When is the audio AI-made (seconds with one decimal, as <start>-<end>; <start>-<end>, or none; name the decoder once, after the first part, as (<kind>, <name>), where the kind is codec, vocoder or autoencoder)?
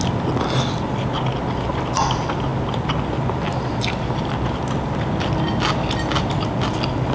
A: none